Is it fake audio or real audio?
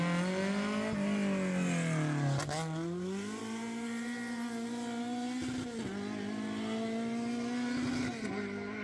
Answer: real